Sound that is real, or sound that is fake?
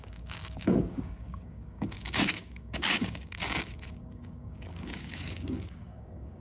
fake